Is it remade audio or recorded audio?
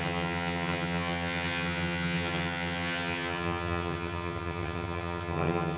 remade